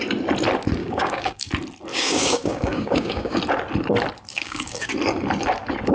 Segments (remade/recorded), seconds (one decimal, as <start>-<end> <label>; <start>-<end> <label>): 0.0-0.8 recorded; 0.8-1.5 remade; 1.5-1.9 recorded; 1.9-3.4 remade; 3.4-4.3 recorded; 4.3-4.9 remade; 4.9-5.9 recorded